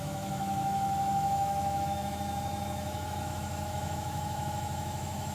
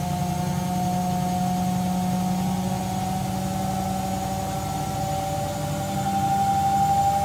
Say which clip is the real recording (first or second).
second